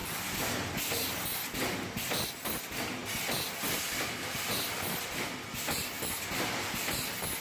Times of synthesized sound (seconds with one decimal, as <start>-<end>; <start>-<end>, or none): none